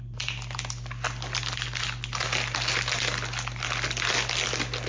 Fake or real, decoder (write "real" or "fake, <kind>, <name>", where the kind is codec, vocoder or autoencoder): real